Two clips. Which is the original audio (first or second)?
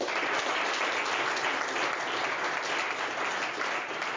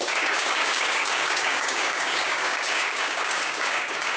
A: first